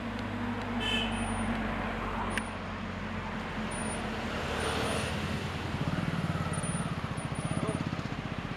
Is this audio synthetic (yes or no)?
no